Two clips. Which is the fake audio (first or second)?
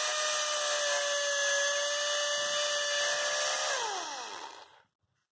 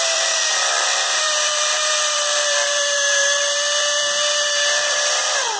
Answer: second